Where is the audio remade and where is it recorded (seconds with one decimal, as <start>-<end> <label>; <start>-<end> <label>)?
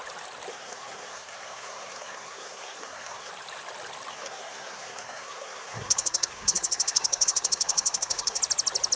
0.0-0.5 recorded; 0.5-3.3 remade; 3.3-4.1 recorded; 4.1-8.4 remade; 8.4-9.0 recorded